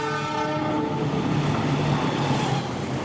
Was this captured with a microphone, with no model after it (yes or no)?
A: yes